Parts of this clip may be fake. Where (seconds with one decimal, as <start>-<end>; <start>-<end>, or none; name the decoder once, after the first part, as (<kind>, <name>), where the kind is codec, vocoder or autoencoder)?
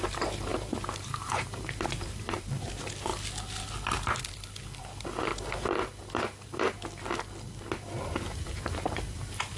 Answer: 0.0-3.1 (vocoder, BigVGAN v2); 4.8-5.3; 8.5-9.6